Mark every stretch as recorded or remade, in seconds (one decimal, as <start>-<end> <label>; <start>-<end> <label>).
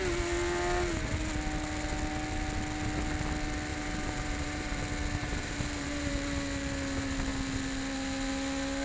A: 0.0-3.7 recorded; 3.7-4.8 remade; 4.8-5.2 recorded; 5.2-6.1 remade; 6.1-8.8 recorded